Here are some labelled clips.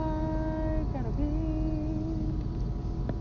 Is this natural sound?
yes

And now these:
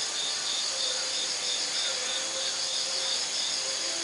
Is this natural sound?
yes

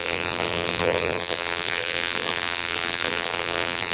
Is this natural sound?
no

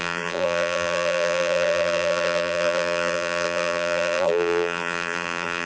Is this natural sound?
no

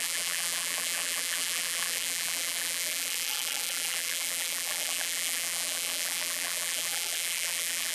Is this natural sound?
no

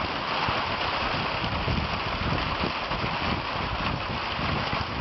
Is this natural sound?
yes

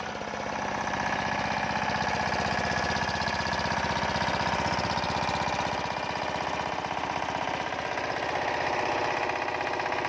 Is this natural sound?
yes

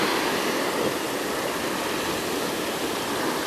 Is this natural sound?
yes